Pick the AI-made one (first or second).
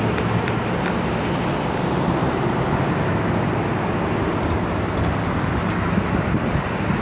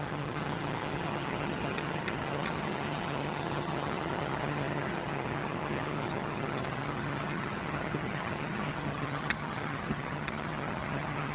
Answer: second